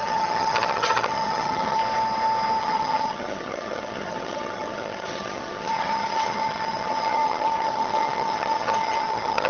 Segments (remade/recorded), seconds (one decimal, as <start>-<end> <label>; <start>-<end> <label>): 0.0-1.8 remade; 1.8-2.6 recorded; 2.6-9.5 remade